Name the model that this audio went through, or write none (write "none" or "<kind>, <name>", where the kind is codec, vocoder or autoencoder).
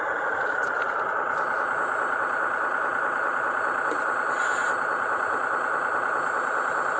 none